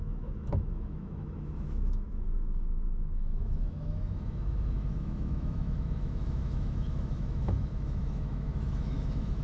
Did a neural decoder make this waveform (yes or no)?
yes